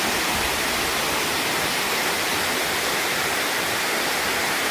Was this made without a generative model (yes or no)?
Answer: yes